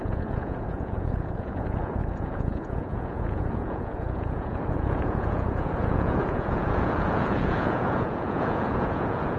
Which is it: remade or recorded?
remade